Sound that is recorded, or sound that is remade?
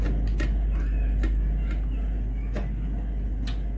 recorded